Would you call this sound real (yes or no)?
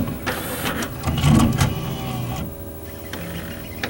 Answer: yes